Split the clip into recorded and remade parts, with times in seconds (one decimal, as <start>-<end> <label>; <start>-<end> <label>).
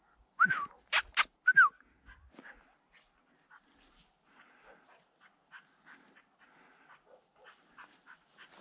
0.0-8.6 recorded